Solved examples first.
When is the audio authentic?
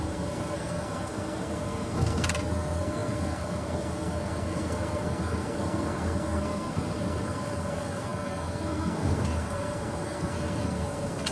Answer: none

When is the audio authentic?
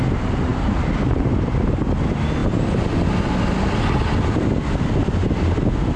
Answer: 0.0-6.0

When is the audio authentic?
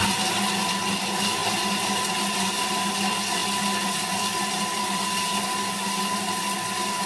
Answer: 0.0-7.1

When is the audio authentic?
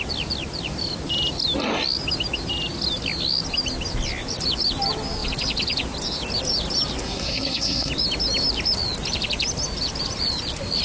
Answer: 0.0-7.0; 7.9-10.8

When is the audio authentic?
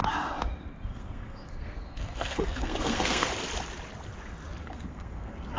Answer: 0.0-0.9; 3.3-4.6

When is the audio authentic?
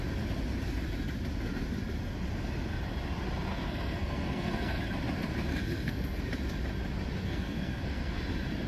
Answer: 0.0-3.5; 4.8-5.5; 6.2-7.2; 8.2-8.7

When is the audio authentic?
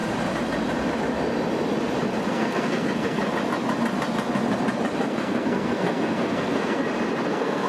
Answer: 0.0-2.3; 3.2-5.0; 6.8-7.3